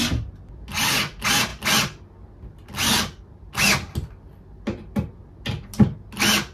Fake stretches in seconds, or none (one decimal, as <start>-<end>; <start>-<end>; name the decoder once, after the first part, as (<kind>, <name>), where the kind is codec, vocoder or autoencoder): none